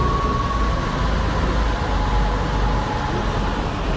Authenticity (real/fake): real